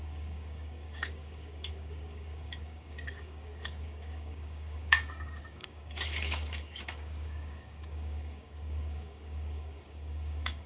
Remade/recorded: remade